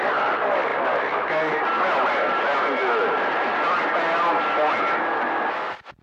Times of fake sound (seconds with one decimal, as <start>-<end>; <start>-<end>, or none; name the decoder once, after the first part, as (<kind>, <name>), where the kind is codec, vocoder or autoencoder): none